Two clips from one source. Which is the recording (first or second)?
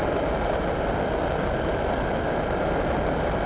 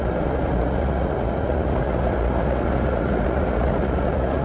first